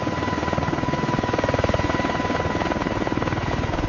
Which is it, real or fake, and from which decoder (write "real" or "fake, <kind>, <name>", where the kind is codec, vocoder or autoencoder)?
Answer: real